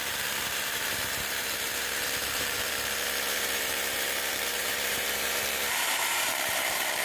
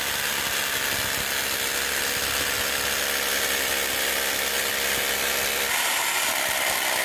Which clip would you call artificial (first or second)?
first